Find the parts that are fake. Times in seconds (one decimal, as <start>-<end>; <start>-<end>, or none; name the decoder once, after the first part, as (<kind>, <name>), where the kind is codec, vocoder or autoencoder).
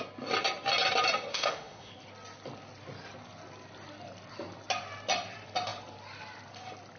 1.3-1.9 (autoencoder, DAC-VAE)